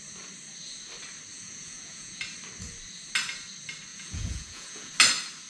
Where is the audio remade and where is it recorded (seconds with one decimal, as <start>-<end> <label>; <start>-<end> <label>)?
0.0-1.3 recorded; 1.3-2.2 remade; 2.2-3.9 recorded; 3.9-4.9 remade; 4.9-5.5 recorded